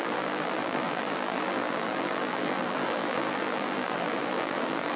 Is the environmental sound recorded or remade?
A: remade